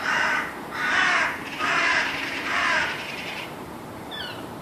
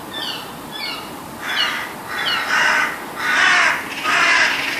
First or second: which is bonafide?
second